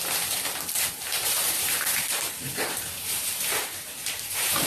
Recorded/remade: remade